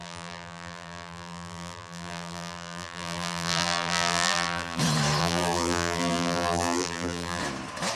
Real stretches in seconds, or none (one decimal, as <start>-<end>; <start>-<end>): 4.8-5.2; 7.4-8.0